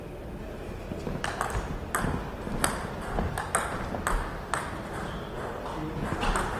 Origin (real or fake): real